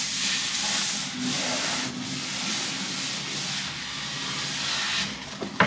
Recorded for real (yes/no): yes